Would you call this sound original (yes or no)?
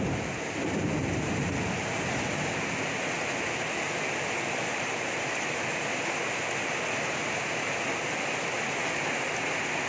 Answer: yes